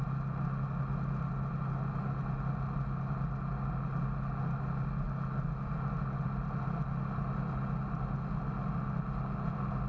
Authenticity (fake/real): real